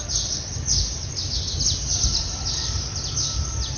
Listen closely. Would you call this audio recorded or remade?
recorded